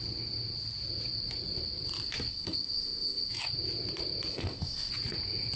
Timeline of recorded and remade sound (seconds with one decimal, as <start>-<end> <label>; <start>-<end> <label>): 0.0-2.3 recorded; 2.3-3.3 remade; 3.3-4.3 recorded; 4.3-4.9 remade; 4.9-5.6 recorded